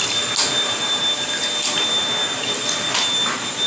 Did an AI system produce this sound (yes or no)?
no